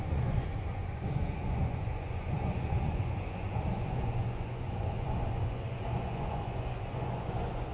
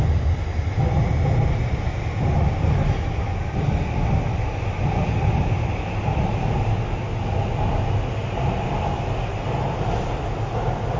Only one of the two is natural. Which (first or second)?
second